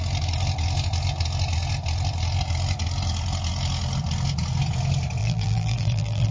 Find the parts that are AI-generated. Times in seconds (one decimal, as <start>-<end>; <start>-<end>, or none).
5.2-6.3